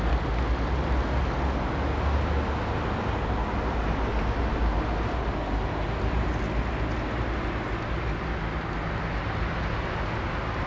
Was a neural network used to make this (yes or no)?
no